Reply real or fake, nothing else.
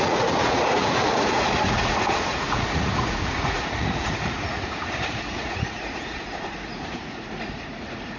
fake